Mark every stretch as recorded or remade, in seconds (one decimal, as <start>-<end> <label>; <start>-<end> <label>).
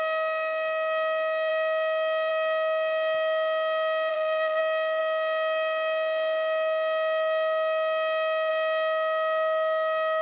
0.0-4.1 recorded; 4.1-4.6 remade; 4.6-10.2 recorded